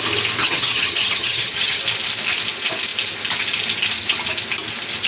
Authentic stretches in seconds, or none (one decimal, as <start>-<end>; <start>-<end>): 0.0-0.4; 1.8-5.1